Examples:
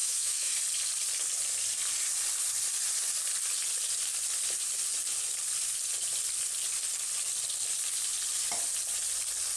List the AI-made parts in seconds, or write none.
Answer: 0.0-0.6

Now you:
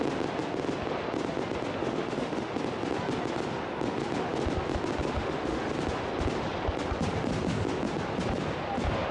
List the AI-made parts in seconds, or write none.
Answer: 1.8-2.5; 5.2-5.7

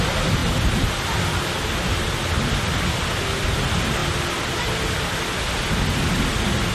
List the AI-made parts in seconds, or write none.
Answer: 0.4-1.2

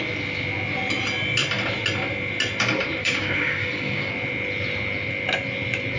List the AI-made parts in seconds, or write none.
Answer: 3.0-4.1